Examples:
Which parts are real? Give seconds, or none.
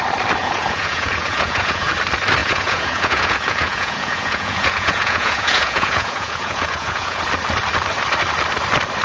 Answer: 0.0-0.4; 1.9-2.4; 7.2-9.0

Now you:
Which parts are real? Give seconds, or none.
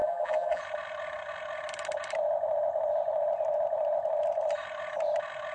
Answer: 0.6-5.5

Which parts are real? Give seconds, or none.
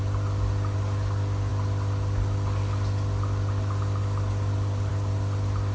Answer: 0.0-5.7